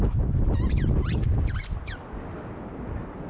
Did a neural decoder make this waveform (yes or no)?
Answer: no